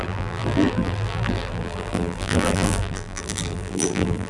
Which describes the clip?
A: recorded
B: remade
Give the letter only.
B